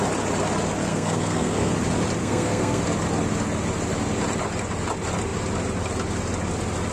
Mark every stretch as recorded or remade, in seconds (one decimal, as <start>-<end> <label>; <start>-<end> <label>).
0.0-0.9 recorded; 0.9-1.7 remade; 1.7-2.2 recorded; 2.2-2.8 remade; 2.8-6.9 recorded